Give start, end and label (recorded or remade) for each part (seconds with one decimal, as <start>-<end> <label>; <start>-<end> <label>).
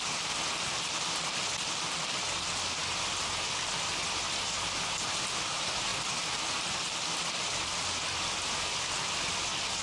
0.0-9.8 recorded